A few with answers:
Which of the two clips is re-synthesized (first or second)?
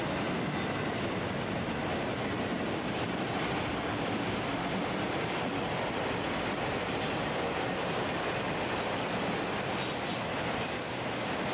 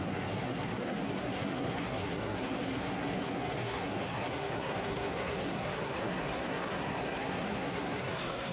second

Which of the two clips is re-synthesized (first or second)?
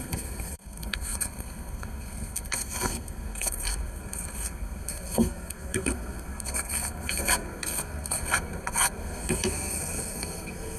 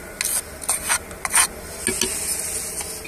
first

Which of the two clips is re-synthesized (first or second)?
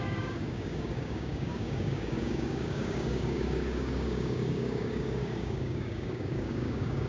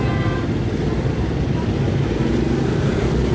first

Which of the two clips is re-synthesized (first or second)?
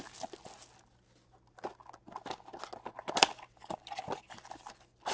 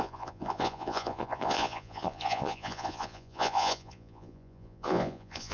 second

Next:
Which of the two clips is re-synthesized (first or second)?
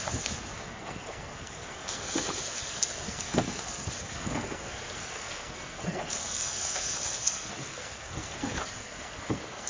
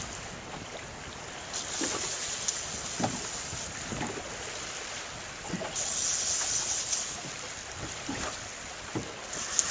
first